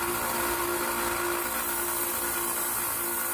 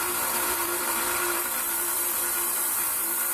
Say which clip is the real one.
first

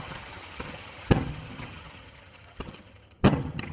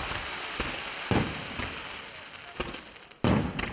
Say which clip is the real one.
second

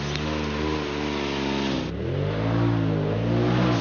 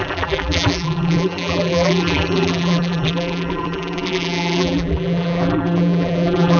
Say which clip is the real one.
first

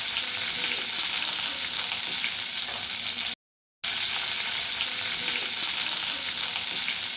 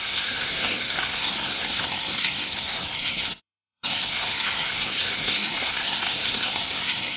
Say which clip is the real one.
first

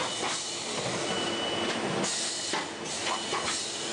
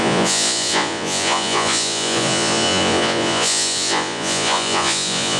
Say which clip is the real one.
first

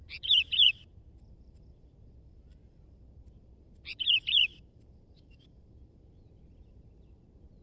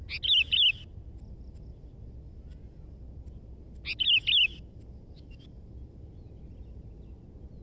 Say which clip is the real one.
second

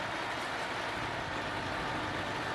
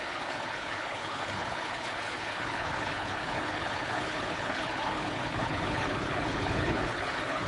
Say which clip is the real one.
first